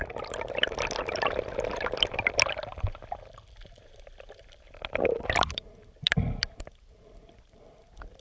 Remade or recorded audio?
remade